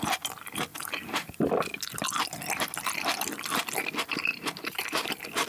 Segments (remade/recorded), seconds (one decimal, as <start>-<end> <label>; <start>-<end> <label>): 0.0-0.7 recorded; 0.7-1.5 remade; 1.5-4.3 recorded; 4.3-5.1 remade; 5.1-5.5 recorded